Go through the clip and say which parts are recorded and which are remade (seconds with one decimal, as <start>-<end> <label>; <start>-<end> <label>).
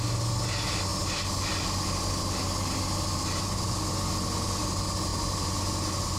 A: 0.0-5.1 recorded; 5.1-5.6 remade; 5.6-6.2 recorded